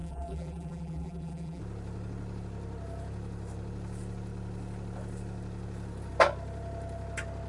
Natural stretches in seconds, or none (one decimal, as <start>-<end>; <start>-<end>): 1.6-7.5